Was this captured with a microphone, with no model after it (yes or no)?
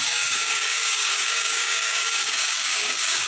no